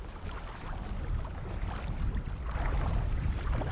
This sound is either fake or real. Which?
real